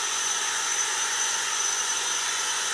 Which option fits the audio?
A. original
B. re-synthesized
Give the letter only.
B